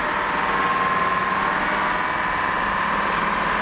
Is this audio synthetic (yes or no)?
no